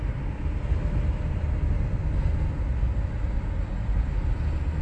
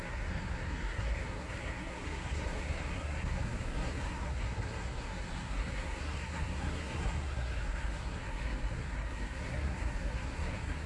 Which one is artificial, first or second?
second